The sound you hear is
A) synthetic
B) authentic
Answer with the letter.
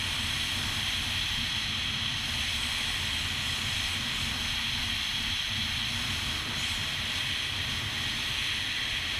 B